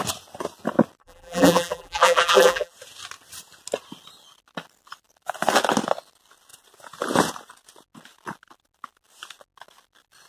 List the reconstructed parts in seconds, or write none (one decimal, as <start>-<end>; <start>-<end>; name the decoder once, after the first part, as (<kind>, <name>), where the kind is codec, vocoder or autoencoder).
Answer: 1.0-2.7 (vocoder, BigVGAN v2)